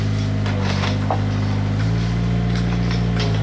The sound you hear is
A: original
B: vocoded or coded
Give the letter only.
A